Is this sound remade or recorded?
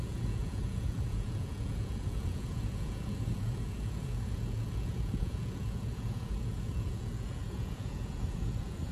remade